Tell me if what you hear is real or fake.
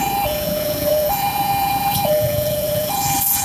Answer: fake